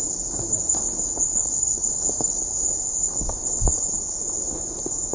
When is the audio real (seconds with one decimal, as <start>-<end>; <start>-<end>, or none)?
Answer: 0.0-5.1